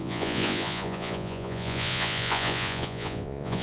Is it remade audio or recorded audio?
remade